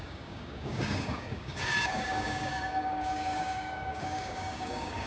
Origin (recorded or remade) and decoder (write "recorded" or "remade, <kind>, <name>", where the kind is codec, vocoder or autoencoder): remade, codec, DAC